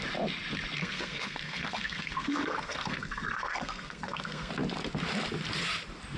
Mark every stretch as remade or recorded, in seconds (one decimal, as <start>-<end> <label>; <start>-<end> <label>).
0.0-0.8 recorded; 0.8-4.5 remade; 4.5-6.2 recorded